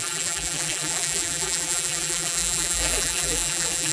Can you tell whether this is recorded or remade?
remade